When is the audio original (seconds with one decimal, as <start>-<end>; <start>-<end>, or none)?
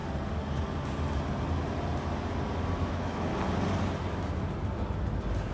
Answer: 0.0-2.7; 3.3-5.5